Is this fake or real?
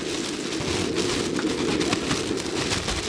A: real